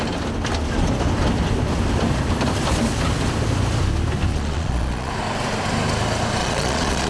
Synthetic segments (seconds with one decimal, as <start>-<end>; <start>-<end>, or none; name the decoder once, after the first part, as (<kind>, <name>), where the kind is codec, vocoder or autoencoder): 4.3-5.1 (vocoder, Vocos); 6.4-7.1